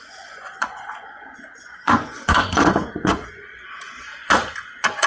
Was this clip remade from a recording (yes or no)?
yes